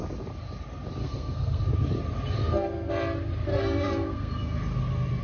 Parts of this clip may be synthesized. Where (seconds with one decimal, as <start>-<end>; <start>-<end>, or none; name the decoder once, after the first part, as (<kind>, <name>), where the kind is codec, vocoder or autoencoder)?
1.0-1.6 (codec, SNAC); 2.4-2.9; 3.5-4.3